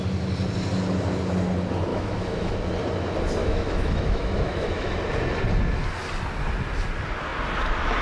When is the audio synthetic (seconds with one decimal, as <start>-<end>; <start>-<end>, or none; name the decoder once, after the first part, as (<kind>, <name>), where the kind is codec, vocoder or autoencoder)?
1.9-2.5 (autoencoder, DAC-VAE); 3.4-4.9